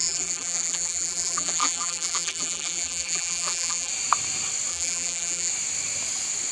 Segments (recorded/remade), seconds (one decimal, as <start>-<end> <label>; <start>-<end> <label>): 0.0-3.9 remade; 3.9-4.7 recorded; 4.7-5.5 remade; 5.5-6.5 recorded